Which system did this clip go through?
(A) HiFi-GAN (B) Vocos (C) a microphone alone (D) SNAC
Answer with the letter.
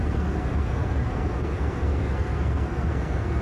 D